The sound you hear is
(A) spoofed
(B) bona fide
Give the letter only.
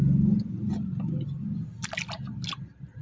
B